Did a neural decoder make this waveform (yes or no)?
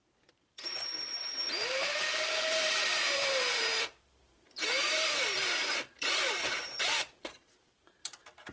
yes